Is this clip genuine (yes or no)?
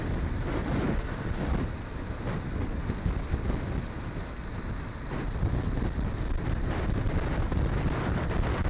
yes